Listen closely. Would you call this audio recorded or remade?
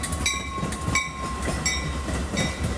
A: recorded